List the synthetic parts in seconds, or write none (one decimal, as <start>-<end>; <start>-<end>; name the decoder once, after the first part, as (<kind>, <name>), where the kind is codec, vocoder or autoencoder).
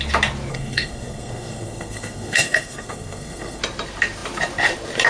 0.5-3.6 (codec, SNAC)